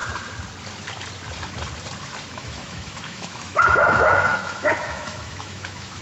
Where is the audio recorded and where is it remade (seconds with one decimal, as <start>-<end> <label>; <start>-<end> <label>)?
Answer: 0.0-2.3 recorded; 2.3-6.0 remade